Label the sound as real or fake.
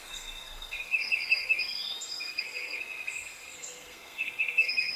fake